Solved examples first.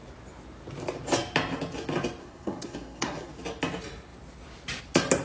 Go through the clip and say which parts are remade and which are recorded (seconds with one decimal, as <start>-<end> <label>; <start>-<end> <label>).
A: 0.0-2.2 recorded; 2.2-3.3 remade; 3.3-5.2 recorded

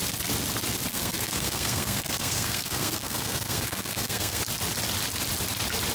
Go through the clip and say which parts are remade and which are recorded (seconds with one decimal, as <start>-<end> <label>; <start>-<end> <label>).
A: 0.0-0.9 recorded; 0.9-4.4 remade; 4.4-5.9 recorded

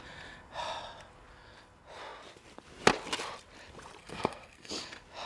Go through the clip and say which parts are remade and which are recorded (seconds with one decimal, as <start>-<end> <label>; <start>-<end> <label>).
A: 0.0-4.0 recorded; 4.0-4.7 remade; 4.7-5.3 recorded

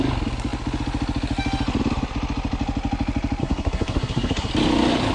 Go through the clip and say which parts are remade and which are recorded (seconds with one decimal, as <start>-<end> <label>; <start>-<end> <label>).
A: 0.0-3.4 recorded; 3.4-4.5 remade; 4.5-5.1 recorded

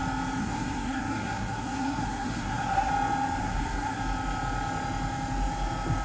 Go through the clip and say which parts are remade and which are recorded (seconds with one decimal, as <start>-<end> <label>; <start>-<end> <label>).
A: 0.0-0.4 recorded; 0.4-2.9 remade; 2.9-3.4 recorded; 3.4-4.0 remade; 4.0-6.0 recorded

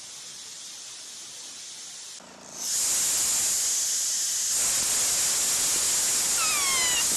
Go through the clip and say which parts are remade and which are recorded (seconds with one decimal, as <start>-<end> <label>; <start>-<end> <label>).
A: 0.0-7.2 recorded

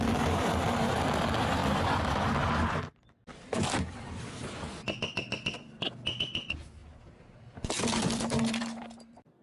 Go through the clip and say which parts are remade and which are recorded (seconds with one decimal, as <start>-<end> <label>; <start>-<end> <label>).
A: 0.0-9.4 recorded

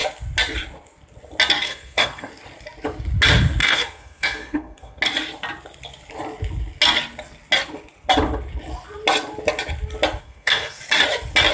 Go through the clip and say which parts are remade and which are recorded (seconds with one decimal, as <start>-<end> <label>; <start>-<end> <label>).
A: 0.0-1.6 recorded; 1.6-2.3 remade; 2.3-3.6 recorded; 3.6-5.0 remade; 5.0-10.2 recorded; 10.2-10.8 remade; 10.8-11.5 recorded